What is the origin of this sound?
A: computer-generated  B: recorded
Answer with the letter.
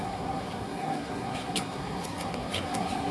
A